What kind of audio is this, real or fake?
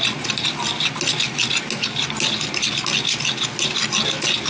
real